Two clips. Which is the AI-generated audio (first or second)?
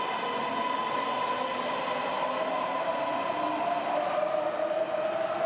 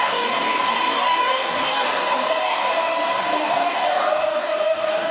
second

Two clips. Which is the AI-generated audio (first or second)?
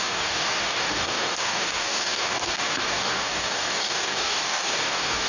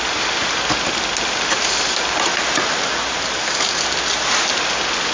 first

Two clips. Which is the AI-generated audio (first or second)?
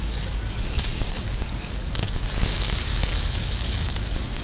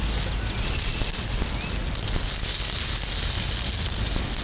first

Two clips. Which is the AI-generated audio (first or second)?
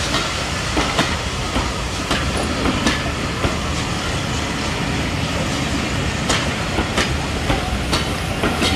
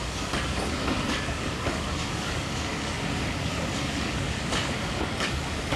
second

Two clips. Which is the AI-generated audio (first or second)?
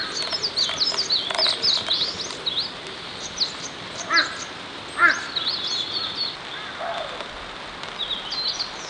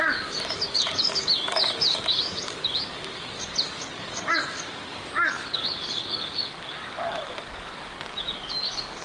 second